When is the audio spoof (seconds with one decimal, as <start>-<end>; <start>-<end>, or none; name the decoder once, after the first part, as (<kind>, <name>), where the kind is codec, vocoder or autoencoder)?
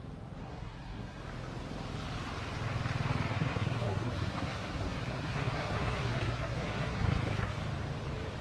0.4-1.2 (codec, SNAC); 3.3-7.5